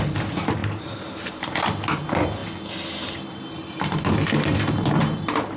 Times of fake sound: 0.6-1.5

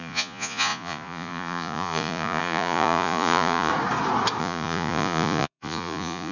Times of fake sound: 0.0-3.7; 4.4-6.3

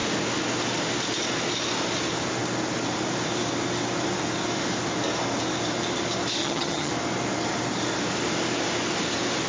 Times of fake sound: 6.4-6.9

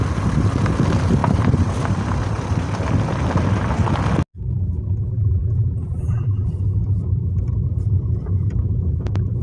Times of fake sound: 5.1-6.5

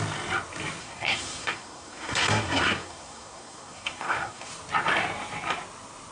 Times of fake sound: 0.8-4.5

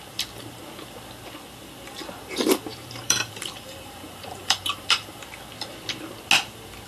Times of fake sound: 2.7-5.2